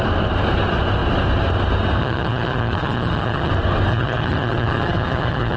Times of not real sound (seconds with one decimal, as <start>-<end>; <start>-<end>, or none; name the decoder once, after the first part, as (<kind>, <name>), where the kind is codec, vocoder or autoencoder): 2.0-3.5 (vocoder, HiFi-GAN); 3.9-5.6